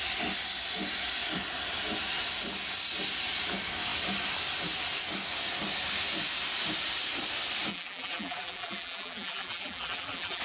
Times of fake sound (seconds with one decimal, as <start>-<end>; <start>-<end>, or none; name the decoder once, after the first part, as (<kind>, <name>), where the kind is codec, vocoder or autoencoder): 7.7-10.4 (vocoder, BigVGAN v2)